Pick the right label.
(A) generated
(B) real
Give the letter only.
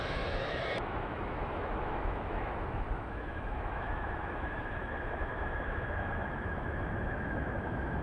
A